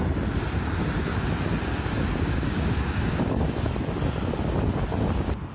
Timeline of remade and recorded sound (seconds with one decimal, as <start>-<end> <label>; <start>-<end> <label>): 0.0-1.1 recorded; 1.1-3.5 remade; 3.5-5.5 recorded